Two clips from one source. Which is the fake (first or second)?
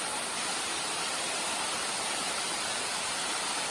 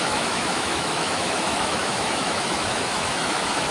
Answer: second